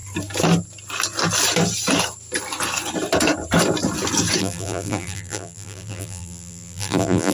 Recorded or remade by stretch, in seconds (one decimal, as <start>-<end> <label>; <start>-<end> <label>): 0.0-4.4 recorded; 4.4-7.3 remade